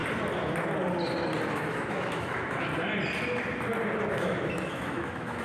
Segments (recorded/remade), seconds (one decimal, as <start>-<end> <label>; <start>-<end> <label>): 0.0-1.5 recorded; 1.5-2.7 remade; 2.7-4.1 recorded; 4.1-5.4 remade